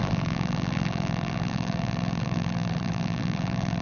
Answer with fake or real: fake